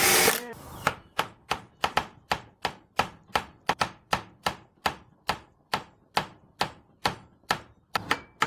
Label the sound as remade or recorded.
remade